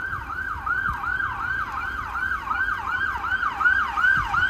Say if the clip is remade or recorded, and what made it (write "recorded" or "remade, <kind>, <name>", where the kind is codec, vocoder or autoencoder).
recorded